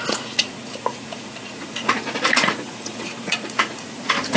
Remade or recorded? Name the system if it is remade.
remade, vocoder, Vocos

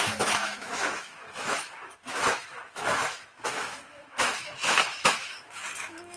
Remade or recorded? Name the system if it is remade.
remade, autoencoder, DAC-VAE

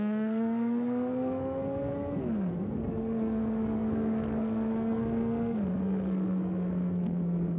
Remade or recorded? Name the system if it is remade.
remade, codec, SNAC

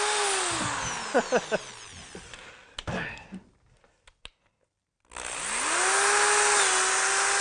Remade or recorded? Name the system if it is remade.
recorded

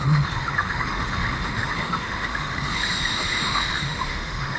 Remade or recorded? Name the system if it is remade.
remade, autoencoder, DAC-VAE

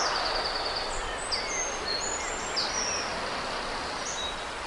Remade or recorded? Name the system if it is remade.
recorded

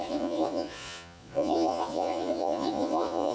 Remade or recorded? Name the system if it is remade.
remade, vocoder, Vocos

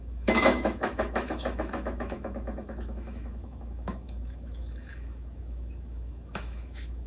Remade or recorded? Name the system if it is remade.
remade, autoencoder, DAC-VAE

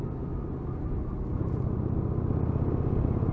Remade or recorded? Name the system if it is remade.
recorded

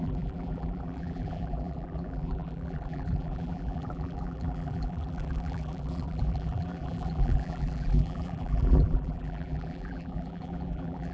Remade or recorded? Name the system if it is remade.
remade, vocoder, BigVGAN v2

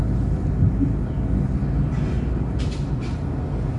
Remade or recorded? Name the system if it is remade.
recorded